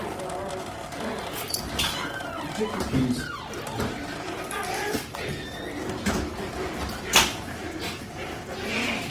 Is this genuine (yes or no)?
yes